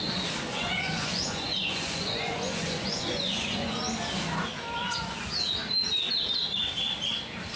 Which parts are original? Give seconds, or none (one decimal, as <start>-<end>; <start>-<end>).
0.0-0.5; 3.8-4.8; 5.3-7.6